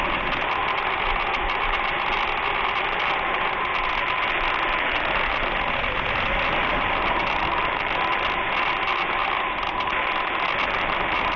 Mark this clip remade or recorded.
recorded